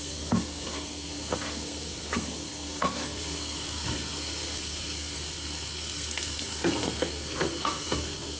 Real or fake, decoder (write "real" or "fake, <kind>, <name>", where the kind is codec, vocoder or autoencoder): fake, codec, SNAC